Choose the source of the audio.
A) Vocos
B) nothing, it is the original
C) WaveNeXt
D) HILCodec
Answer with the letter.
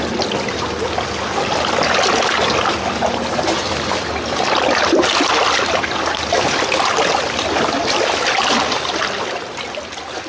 B